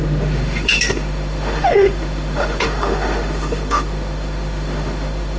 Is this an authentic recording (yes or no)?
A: no